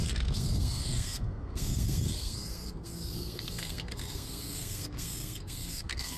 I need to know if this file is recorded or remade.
remade